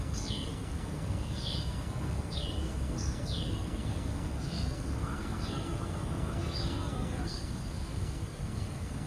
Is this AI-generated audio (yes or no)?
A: yes